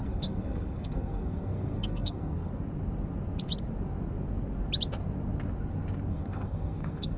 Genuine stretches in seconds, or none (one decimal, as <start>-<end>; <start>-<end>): 2.5-6.1